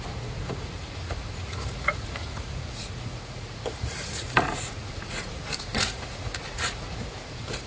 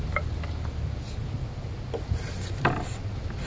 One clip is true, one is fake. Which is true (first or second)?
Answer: second